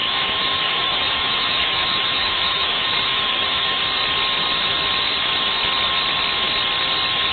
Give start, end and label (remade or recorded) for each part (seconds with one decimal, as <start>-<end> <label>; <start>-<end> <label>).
0.0-3.8 remade; 3.8-7.3 recorded

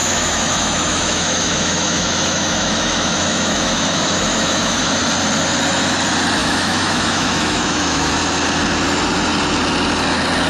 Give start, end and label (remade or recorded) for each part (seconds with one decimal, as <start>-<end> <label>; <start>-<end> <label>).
0.0-5.0 remade; 5.0-6.4 recorded; 6.4-8.2 remade; 8.2-10.5 recorded

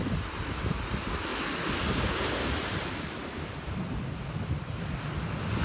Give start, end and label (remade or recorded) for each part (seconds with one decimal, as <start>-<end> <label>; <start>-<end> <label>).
0.0-5.6 recorded

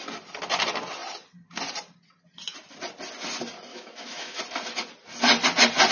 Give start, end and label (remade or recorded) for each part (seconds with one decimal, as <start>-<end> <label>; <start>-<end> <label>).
0.0-3.7 recorded; 3.7-4.4 remade; 4.4-5.9 recorded

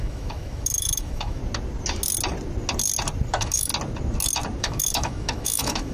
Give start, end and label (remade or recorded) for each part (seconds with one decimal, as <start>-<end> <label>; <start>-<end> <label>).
0.0-1.4 remade; 1.4-3.3 recorded; 3.3-3.7 remade; 3.7-4.6 recorded; 4.6-5.9 remade

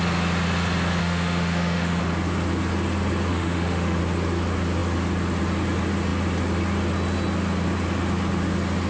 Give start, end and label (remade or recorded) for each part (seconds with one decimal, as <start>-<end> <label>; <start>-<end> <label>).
0.0-1.0 recorded; 1.0-2.0 remade; 2.0-3.3 recorded; 3.3-4.0 remade; 4.0-8.9 recorded

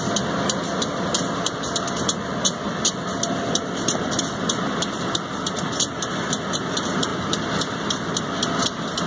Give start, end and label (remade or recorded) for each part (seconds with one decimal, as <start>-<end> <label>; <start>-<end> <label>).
0.0-9.1 recorded